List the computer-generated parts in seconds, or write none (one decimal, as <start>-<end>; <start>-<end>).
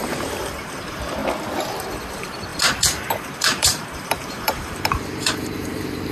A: 0.0-1.2; 2.1-2.5; 3.3-6.1